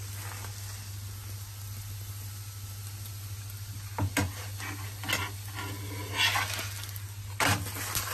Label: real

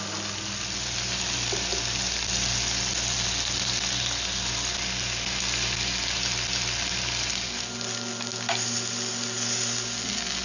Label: real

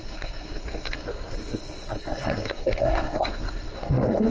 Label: fake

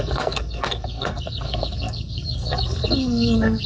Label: fake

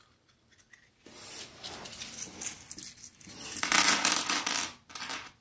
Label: real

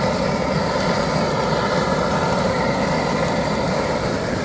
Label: real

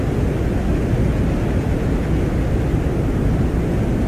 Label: real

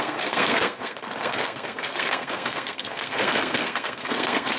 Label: fake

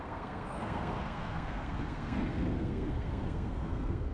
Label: fake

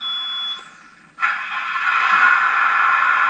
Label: real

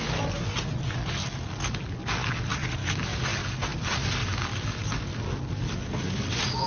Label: real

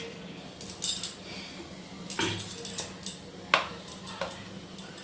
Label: real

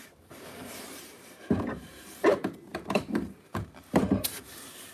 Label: fake